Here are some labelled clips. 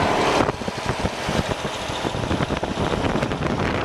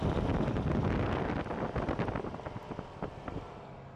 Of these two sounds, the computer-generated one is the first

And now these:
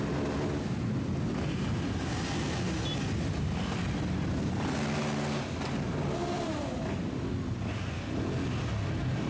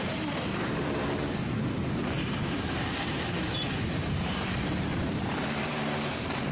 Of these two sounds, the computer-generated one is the second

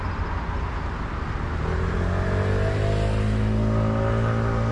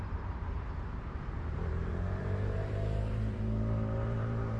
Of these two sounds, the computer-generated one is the second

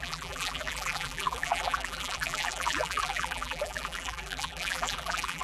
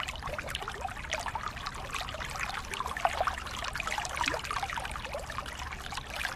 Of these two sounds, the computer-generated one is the first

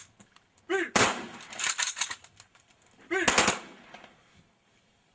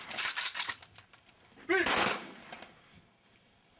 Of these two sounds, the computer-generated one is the second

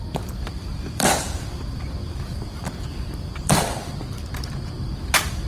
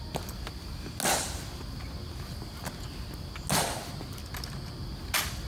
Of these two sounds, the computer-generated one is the first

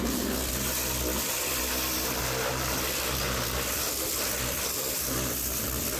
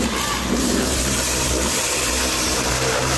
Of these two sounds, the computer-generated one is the second